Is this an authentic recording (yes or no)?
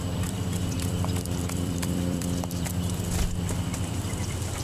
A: no